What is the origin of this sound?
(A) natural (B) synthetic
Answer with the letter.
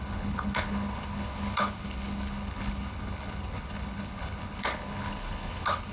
B